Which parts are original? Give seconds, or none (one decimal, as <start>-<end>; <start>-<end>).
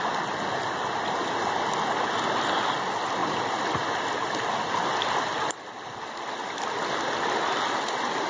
0.0-8.3